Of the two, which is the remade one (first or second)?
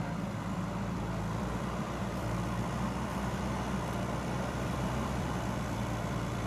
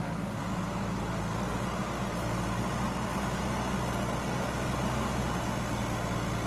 first